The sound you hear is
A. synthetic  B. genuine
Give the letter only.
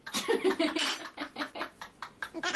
B